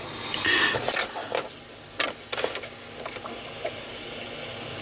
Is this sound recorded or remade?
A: recorded